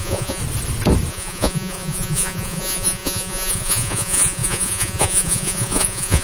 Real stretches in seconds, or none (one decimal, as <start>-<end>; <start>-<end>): 0.4-1.1